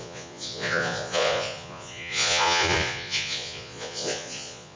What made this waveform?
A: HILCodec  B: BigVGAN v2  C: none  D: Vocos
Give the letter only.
D